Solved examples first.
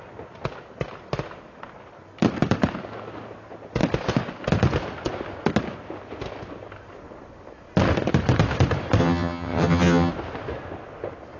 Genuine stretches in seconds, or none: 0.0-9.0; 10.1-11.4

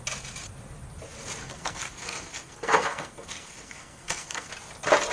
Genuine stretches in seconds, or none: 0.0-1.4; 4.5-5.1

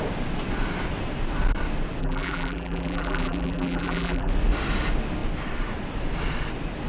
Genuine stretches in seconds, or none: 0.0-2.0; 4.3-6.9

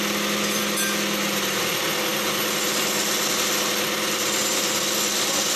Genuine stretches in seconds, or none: 0.0-5.6